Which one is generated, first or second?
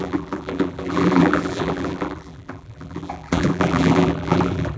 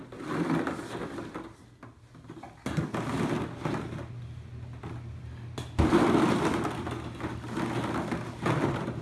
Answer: first